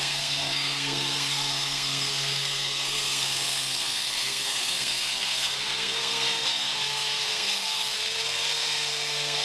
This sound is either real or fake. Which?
fake